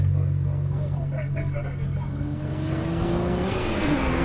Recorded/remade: remade